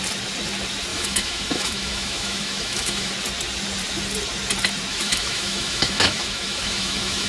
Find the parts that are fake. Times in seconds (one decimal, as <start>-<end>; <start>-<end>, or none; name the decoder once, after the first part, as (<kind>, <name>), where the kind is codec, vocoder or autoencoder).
0.9-3.1 (autoencoder, DAC-VAE); 4.9-7.3

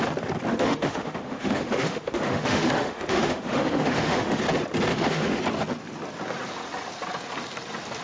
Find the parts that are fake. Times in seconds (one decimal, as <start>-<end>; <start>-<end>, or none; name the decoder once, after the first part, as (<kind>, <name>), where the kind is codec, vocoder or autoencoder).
0.5-4.4 (autoencoder, DAC-VAE); 4.9-5.4

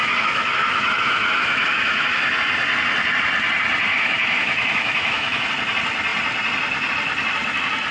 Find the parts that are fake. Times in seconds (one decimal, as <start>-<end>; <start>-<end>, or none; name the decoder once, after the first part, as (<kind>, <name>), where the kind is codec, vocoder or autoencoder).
0.0-2.2 (autoencoder, DAC-VAE); 3.9-5.5

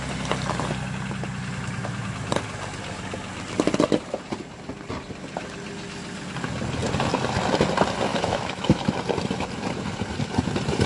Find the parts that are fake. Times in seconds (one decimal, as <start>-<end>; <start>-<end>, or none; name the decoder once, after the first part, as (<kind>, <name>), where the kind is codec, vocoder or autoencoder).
8.1-8.8 (autoencoder, DAC-VAE)

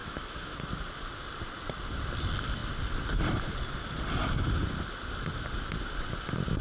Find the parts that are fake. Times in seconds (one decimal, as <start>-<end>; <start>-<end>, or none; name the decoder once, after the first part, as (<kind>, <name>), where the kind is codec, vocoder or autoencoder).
0.0-0.6 (autoencoder, DAC-VAE)

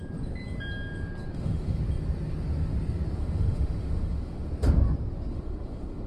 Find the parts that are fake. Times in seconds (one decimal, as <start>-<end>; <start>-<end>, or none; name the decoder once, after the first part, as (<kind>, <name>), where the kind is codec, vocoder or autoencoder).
1.3-1.8 (autoencoder, DAC-VAE); 3.2-4.5; 5.3-6.1

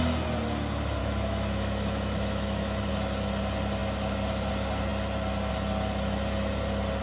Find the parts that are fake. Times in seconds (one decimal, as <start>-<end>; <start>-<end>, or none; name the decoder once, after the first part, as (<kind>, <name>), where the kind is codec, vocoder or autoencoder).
1.0-2.9 (autoencoder, DAC-VAE)

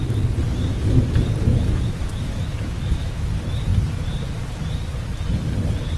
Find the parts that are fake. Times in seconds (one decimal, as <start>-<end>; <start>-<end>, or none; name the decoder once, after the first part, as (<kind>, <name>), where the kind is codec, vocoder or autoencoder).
1.5-3.3 (autoencoder, DAC-VAE)